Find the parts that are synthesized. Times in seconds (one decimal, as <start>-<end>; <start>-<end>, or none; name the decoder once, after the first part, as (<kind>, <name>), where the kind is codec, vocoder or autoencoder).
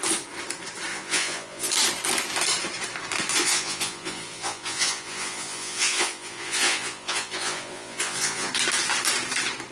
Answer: 0.9-1.7 (vocoder, Vocos); 3.4-8.5